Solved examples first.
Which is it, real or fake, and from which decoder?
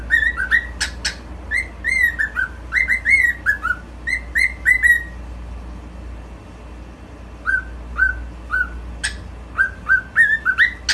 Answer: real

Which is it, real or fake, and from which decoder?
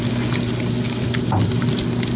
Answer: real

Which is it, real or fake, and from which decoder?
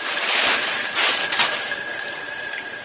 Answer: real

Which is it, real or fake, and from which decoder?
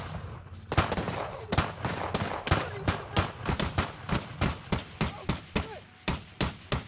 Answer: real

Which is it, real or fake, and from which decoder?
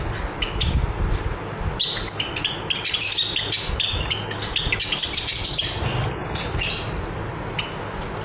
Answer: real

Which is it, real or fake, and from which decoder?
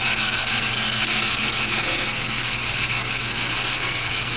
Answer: fake, codec, SNAC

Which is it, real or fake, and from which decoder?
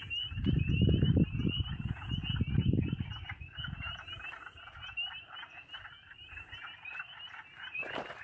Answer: real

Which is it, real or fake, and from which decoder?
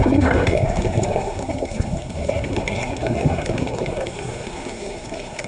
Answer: fake, codec, SNAC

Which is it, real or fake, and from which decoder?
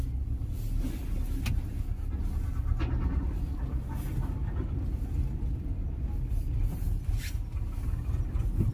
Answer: real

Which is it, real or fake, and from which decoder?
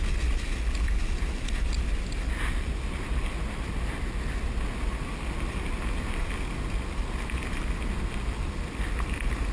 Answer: real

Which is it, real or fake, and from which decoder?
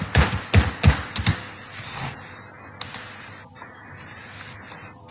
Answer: real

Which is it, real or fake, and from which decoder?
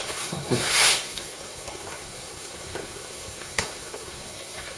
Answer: fake, codec, SNAC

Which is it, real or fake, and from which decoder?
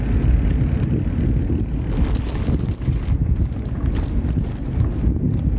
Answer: real